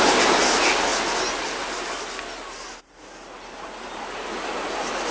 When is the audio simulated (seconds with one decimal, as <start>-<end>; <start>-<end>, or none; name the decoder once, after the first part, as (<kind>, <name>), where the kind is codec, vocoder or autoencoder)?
none